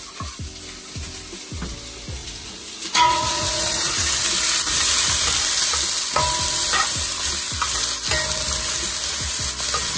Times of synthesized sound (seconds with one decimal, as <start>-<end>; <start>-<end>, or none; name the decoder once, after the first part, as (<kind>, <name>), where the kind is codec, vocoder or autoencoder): 2.2-4.1 (vocoder, Vocos)